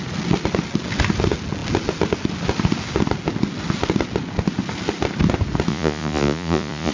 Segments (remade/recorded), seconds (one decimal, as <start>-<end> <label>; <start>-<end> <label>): 0.0-5.7 recorded; 5.7-6.9 remade